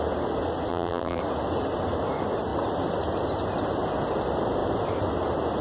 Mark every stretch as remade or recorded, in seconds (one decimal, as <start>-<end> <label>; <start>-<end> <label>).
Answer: 0.0-0.7 recorded; 0.7-1.2 remade; 1.2-5.6 recorded